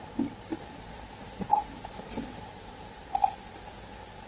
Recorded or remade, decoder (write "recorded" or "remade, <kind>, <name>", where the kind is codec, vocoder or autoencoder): recorded